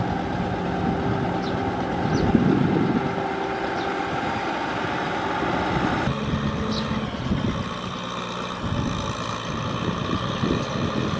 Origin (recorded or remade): recorded